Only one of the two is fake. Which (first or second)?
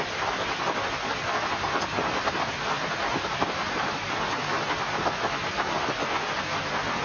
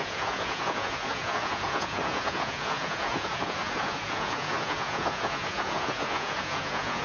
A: second